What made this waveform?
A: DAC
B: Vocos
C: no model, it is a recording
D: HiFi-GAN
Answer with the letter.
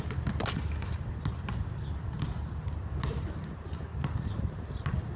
C